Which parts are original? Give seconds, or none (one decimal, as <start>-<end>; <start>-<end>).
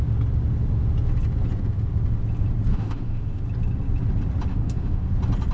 0.0-2.7; 3.4-4.5; 5.1-5.5